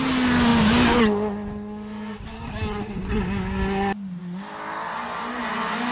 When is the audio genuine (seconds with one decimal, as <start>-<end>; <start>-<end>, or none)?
0.0-5.9